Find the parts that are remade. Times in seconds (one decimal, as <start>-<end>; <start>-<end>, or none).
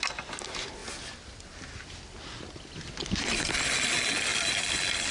none